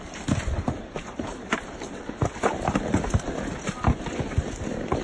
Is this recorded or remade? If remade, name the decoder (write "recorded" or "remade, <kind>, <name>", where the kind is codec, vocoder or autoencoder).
recorded